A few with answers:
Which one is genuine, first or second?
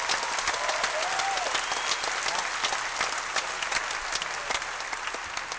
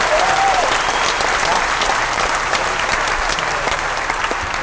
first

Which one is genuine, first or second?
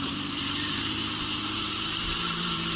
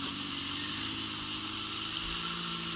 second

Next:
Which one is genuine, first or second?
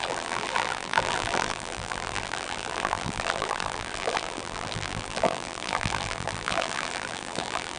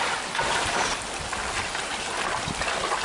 second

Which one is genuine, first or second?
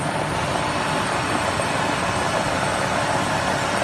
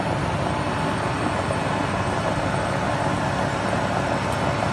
second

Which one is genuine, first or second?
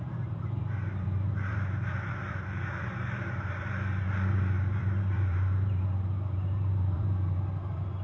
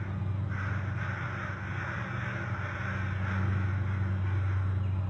second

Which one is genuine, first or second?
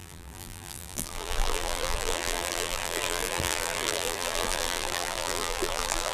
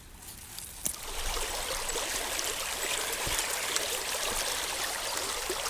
second